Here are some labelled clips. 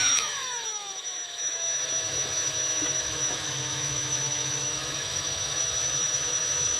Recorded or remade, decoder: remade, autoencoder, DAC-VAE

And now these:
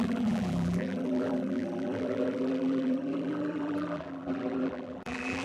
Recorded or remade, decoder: remade, vocoder, BigVGAN v2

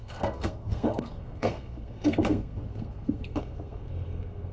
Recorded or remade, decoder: remade, codec, SNAC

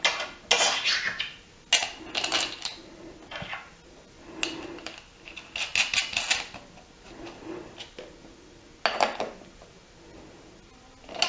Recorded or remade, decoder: recorded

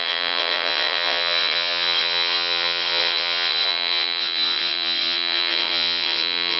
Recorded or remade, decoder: remade, vocoder, WaveNeXt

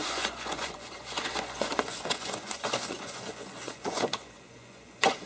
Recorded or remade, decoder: remade, vocoder, Vocos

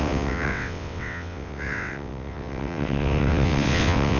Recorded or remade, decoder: remade, vocoder, WaveNeXt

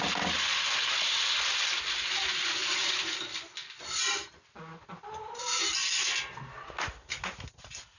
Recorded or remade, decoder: recorded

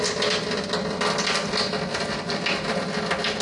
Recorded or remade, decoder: recorded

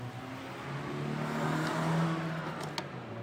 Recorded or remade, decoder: recorded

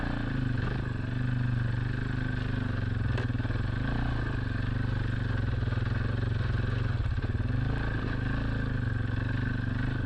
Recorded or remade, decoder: recorded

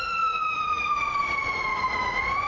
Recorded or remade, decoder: remade, vocoder, Vocos